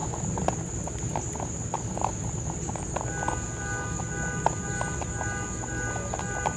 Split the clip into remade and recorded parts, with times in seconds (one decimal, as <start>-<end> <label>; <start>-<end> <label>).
0.0-6.6 recorded